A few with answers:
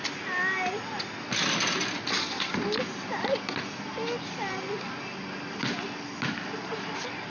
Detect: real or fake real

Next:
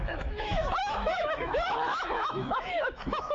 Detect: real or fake fake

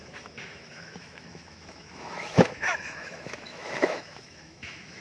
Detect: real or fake fake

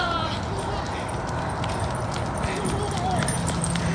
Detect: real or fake real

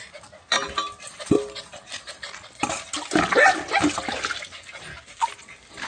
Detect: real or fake real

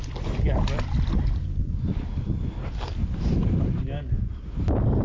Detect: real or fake real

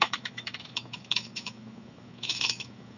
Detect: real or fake fake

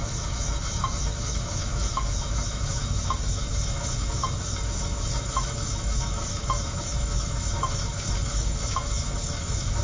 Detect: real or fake fake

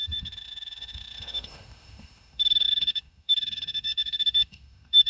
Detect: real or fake fake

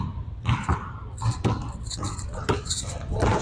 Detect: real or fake real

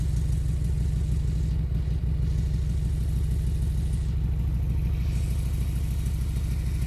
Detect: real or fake real